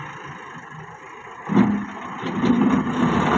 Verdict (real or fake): real